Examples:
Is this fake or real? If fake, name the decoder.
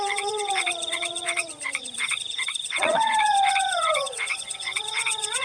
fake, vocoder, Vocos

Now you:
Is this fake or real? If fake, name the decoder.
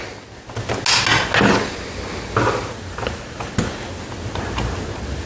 real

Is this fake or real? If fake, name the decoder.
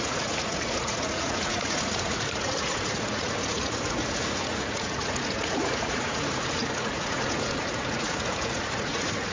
fake, vocoder, Vocos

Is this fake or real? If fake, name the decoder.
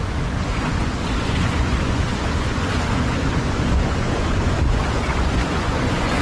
fake, vocoder, Vocos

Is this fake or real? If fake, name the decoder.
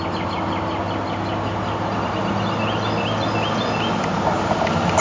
real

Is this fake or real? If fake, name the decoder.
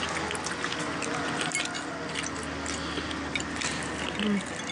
real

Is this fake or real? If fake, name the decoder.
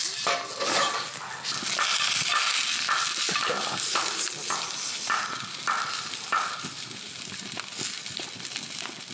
real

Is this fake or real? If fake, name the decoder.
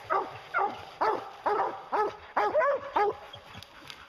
real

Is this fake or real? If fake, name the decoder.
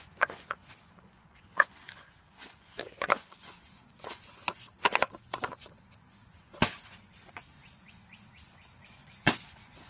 fake, vocoder, Vocos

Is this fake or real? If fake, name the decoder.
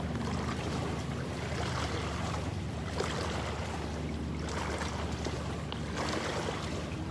real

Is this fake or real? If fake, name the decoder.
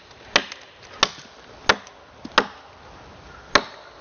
real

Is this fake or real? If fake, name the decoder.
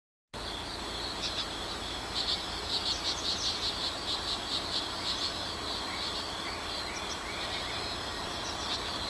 real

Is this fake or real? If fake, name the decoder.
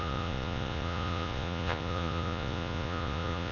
fake, vocoder, Vocos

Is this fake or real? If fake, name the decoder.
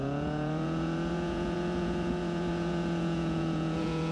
fake, vocoder, Vocos